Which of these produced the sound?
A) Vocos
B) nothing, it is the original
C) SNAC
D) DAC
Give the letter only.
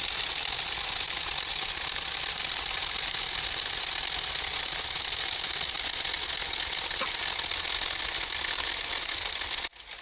B